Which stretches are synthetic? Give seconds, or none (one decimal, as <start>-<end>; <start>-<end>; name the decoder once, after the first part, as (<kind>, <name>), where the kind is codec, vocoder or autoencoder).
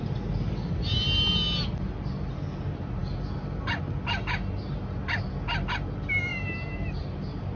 none